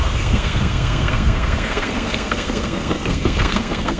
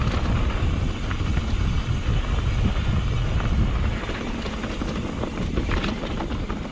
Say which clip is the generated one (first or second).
first